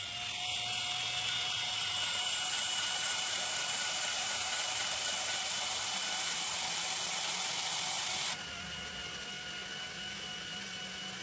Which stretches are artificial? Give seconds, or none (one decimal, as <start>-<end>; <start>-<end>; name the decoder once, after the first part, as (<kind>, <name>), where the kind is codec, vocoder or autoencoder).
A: 1.8-6.5 (vocoder, BigVGAN v2)